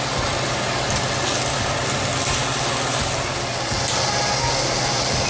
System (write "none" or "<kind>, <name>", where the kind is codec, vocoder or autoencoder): none